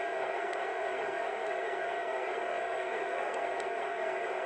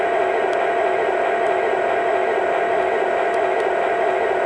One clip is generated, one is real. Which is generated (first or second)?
first